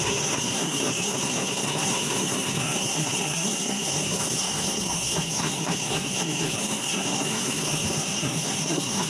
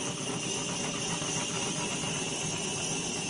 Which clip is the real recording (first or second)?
second